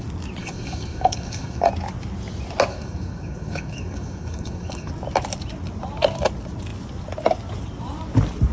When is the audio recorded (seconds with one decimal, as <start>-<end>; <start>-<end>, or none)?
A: 0.0-0.4; 1.7-2.7; 4.9-8.5